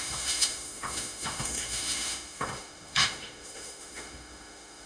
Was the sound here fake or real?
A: fake